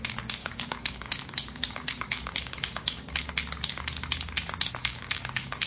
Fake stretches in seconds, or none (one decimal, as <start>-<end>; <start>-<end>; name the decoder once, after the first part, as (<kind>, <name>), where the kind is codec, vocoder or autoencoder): 0.4-3.3 (codec, DAC); 4.8-5.7